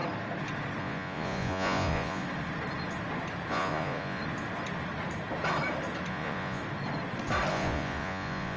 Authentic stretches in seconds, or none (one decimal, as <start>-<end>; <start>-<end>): 0.0-0.8; 2.2-3.5; 4.2-6.1; 6.6-7.5